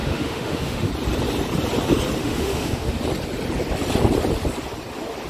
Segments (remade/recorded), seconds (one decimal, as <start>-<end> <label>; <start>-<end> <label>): 0.0-0.9 remade; 0.9-2.2 recorded; 2.2-3.0 remade; 3.0-5.3 recorded